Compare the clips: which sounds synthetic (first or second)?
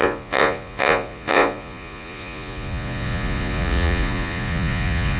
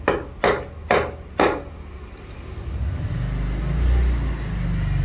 first